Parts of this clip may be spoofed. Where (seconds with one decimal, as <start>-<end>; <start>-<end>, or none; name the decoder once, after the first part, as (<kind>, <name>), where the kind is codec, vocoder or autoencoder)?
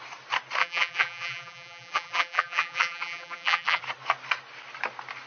0.6-3.8 (vocoder, BigVGAN v2)